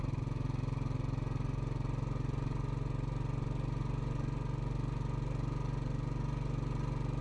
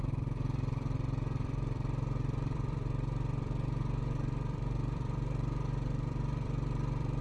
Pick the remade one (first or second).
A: second